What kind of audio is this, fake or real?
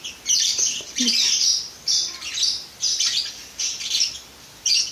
fake